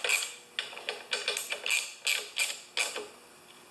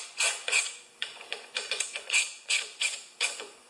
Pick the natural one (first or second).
first